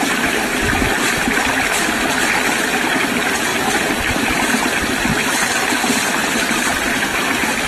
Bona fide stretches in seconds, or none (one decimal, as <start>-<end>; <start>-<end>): 0.5-2.8; 7.1-7.7